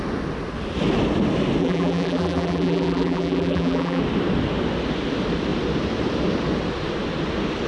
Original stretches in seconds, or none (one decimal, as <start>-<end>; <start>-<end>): 0.0-1.6; 4.0-7.7